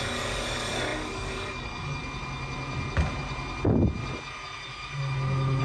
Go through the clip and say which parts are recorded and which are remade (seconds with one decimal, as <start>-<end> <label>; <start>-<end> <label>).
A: 0.0-2.0 remade; 2.0-5.6 recorded